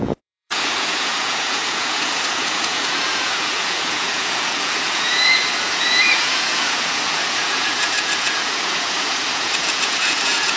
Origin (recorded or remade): remade